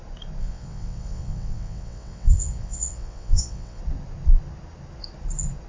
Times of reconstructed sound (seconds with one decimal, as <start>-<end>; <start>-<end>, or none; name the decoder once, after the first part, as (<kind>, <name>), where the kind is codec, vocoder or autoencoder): 0.4-3.8 (vocoder, WaveNeXt)